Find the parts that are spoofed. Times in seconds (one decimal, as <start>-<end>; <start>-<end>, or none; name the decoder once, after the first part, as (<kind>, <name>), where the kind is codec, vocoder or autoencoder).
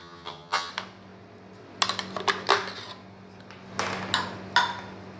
0.0-0.7 (vocoder, HiFi-GAN)